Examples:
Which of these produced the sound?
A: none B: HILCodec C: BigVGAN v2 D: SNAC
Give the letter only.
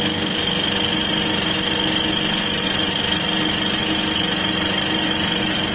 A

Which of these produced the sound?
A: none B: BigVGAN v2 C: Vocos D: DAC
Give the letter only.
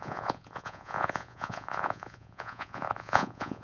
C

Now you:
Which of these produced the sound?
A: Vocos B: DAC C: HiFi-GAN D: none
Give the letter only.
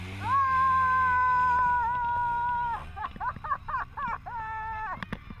D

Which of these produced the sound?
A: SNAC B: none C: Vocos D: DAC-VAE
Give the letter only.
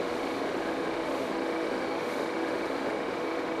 D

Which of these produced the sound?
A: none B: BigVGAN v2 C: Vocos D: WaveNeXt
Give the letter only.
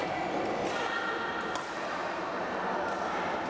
A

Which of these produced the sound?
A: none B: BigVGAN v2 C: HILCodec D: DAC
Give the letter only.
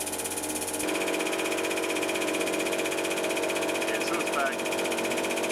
A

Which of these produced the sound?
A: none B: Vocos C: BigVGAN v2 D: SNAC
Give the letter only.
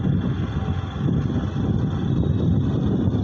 A